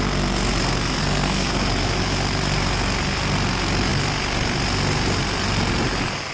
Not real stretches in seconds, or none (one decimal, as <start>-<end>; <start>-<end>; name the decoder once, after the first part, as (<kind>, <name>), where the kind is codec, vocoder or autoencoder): 1.0-1.5 (codec, SNAC)